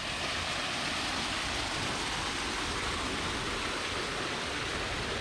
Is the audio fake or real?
real